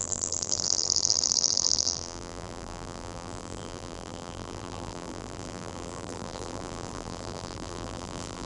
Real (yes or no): no